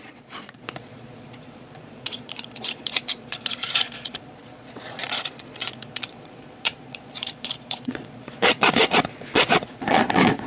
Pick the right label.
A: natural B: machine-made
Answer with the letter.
B